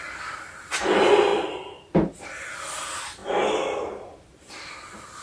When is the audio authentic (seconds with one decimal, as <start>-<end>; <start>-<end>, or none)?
0.0-5.2